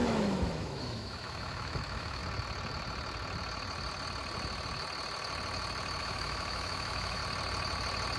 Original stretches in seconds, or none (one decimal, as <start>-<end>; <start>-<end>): 2.2-6.0; 7.2-8.2